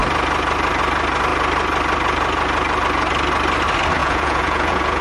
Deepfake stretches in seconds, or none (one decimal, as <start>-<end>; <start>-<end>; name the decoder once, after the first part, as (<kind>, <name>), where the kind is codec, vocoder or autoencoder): 4.0-5.0 (vocoder, Vocos)